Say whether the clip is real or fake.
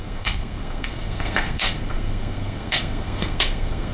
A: fake